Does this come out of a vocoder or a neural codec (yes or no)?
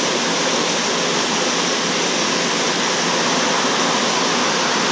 no